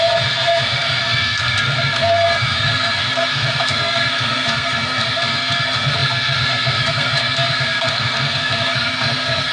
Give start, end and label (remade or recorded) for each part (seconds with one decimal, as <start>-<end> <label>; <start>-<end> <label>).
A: 0.0-9.5 remade